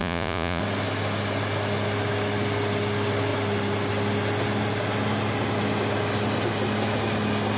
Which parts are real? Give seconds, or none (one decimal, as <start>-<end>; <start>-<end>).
0.6-7.6

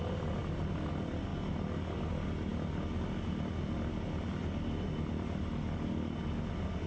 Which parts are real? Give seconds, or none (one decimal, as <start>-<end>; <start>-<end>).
0.0-6.9

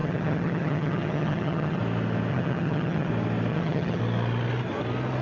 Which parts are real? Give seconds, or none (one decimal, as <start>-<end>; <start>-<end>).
1.8-2.3; 3.1-3.5; 4.0-5.2

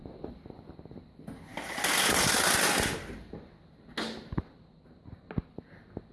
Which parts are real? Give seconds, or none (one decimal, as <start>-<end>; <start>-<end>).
0.0-6.1